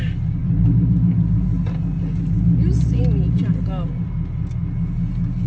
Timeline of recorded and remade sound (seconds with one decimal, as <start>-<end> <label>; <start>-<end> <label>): 0.0-5.5 recorded